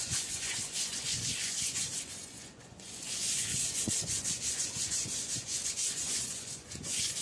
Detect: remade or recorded remade